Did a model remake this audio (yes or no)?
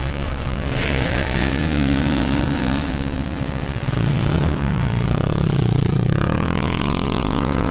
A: yes